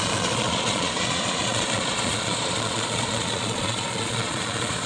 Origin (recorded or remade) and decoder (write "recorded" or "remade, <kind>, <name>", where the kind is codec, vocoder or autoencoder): remade, vocoder, Vocos